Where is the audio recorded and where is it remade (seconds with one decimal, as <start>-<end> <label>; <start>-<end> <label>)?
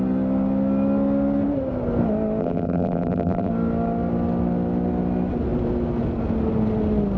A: 0.0-2.4 recorded; 2.4-3.5 remade; 3.5-7.2 recorded